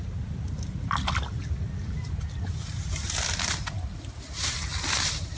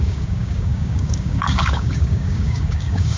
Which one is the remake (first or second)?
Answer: second